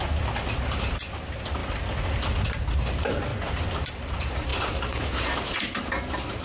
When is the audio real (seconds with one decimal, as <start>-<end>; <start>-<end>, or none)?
0.0-6.4